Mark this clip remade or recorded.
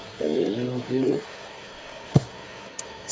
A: remade